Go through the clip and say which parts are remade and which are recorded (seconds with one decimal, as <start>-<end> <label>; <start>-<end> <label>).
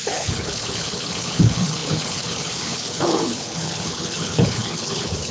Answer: 0.0-5.3 remade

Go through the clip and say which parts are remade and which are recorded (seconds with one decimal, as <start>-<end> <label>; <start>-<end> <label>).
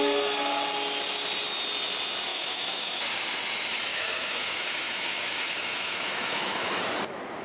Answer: 0.0-2.3 recorded; 2.3-3.0 remade; 3.0-3.9 recorded; 3.9-6.7 remade; 6.7-7.4 recorded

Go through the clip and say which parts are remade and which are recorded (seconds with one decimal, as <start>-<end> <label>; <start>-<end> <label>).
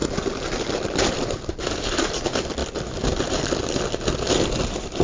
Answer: 0.0-1.1 recorded; 1.1-2.6 remade; 2.6-4.5 recorded; 4.5-5.0 remade